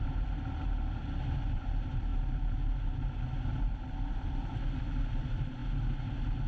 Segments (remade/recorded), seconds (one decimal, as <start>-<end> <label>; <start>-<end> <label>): 0.0-5.6 remade; 5.6-6.5 recorded

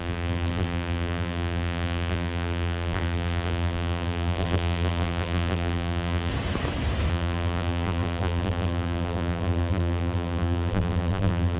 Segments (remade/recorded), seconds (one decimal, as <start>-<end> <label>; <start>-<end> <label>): 0.0-6.3 remade; 6.3-7.1 recorded; 7.1-11.6 remade

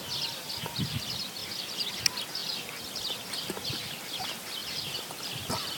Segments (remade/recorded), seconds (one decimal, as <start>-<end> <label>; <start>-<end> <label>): 0.0-1.4 recorded; 1.4-1.9 remade; 1.9-4.6 recorded; 4.6-5.3 remade; 5.3-5.8 recorded

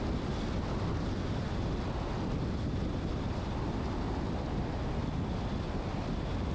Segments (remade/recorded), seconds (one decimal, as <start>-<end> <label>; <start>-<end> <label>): 0.0-3.1 recorded; 3.1-3.8 remade; 3.8-6.5 recorded